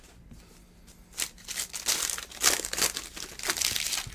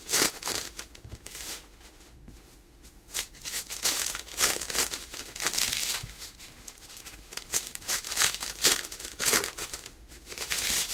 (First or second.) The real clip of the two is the first